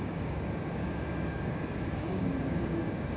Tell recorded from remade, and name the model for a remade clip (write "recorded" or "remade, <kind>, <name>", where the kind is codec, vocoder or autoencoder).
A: remade, codec, DAC